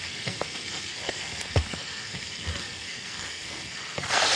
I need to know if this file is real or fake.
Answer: fake